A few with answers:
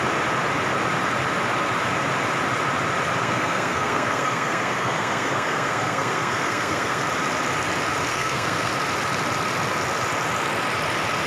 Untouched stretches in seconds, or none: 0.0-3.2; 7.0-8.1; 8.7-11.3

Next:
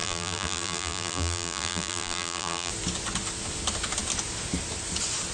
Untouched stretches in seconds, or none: 2.7-5.3

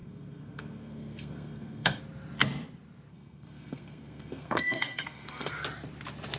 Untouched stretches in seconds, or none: 2.0-3.1; 5.5-6.4

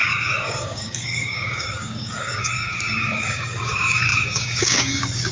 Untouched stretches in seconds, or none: none

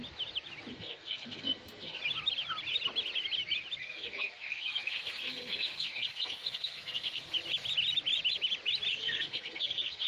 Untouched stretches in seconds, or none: 0.0-0.7; 2.0-3.8; 7.3-8.9

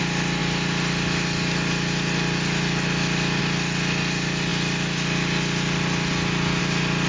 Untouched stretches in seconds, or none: 0.0-7.1

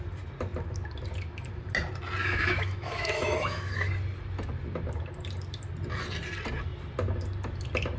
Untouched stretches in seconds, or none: 0.0-2.2; 3.9-8.0

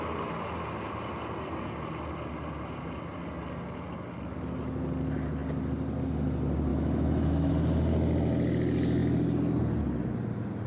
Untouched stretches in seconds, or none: 0.0-6.7; 7.5-10.7